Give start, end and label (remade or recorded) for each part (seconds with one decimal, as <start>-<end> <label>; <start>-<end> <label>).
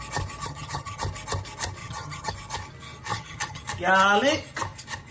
0.0-0.4 recorded; 0.4-1.0 remade; 1.0-1.8 recorded; 1.8-2.3 remade; 2.3-3.1 recorded; 3.1-3.6 remade; 3.6-5.1 recorded